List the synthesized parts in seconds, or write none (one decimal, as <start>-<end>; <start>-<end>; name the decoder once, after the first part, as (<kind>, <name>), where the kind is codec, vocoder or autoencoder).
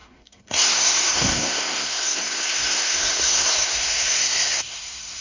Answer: 0.0-5.2 (codec, SNAC)